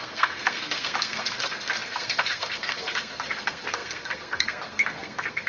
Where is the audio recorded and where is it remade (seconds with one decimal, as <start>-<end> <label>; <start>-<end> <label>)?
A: 0.0-5.5 remade